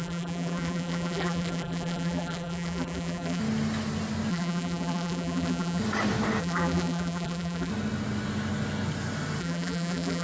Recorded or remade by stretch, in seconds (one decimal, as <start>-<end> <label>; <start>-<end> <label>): 0.0-3.4 remade; 3.4-4.3 recorded; 4.3-5.8 remade; 5.8-6.4 recorded; 6.4-7.7 remade; 7.7-9.4 recorded; 9.4-10.2 remade